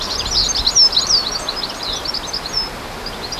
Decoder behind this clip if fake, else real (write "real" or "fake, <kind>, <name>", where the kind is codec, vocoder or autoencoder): real